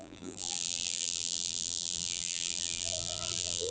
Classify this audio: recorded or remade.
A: remade